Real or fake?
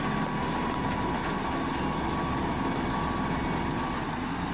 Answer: real